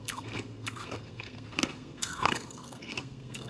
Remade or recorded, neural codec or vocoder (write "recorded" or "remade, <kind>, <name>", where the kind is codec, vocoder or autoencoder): remade, codec, SNAC